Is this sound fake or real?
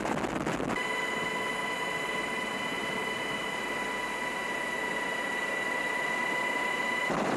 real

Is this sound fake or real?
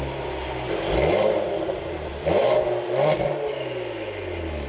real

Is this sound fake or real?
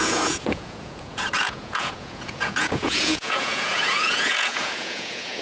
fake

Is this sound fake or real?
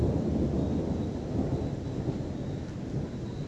real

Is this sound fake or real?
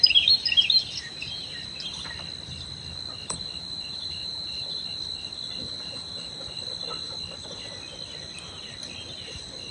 real